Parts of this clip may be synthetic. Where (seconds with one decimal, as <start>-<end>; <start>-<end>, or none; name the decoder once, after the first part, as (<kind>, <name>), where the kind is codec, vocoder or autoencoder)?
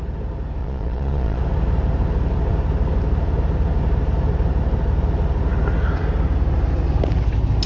0.6-1.4 (vocoder, Vocos)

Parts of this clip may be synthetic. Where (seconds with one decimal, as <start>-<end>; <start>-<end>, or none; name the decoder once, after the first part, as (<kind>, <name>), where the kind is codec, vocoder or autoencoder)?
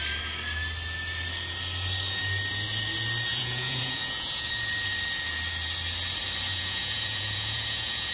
3.3-4.5 (vocoder, Vocos); 6.5-8.1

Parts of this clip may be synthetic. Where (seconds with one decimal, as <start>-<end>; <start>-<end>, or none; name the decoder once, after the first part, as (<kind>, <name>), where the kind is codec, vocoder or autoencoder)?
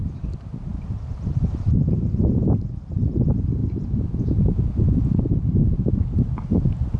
3.6-5.1 (vocoder, Vocos)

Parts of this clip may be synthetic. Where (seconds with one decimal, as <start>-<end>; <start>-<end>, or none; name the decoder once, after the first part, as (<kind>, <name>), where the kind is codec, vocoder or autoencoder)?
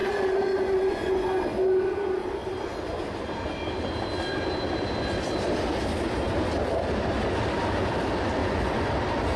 0.0-1.4 (vocoder, Vocos); 8.4-8.9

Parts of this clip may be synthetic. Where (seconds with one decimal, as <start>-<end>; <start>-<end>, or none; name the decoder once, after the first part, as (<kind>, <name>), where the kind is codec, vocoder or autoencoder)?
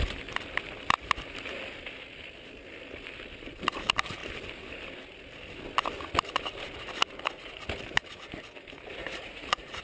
9.0-9.8 (vocoder, Vocos)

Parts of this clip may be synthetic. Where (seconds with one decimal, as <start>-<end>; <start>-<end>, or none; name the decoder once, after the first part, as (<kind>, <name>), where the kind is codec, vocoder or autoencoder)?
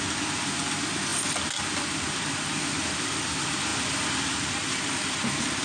none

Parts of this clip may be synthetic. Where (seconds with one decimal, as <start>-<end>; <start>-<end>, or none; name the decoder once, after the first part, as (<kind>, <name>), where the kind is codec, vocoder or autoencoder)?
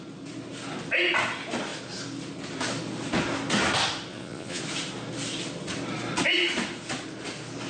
4.1-4.6 (vocoder, Vocos)